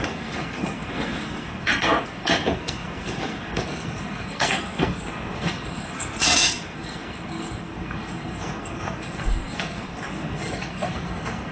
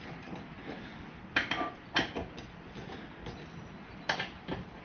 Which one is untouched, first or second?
second